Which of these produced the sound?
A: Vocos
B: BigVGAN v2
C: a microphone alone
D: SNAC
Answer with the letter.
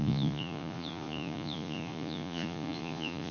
A